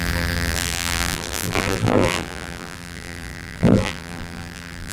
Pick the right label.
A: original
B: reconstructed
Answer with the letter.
B